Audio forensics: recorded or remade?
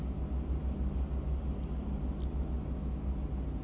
recorded